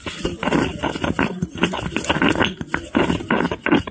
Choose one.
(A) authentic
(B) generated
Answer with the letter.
A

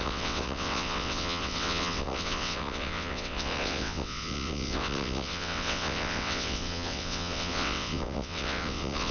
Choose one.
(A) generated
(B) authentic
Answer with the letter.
A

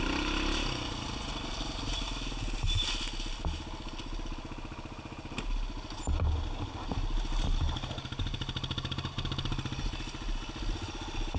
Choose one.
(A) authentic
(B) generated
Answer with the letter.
A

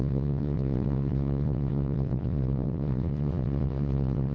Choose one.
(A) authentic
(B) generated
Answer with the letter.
B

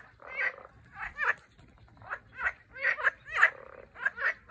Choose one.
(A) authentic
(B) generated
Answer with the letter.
A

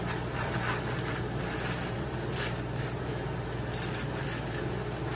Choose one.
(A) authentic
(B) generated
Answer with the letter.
A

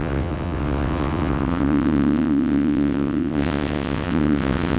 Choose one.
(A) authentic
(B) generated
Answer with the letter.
B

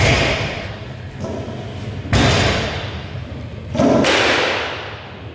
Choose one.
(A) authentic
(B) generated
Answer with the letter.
A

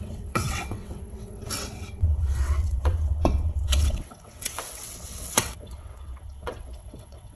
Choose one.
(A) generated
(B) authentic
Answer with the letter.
A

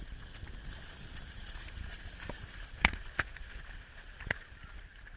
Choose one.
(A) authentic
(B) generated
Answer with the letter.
A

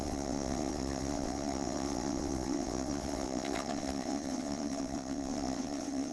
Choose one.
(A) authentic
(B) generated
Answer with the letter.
B